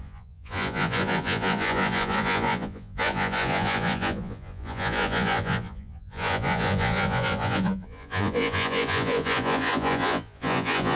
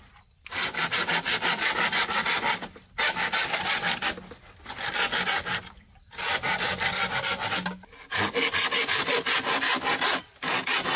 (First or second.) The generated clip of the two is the first